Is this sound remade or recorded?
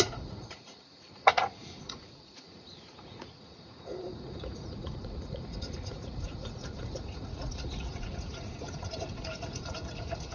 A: remade